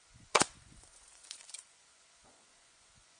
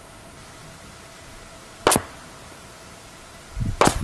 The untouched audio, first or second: second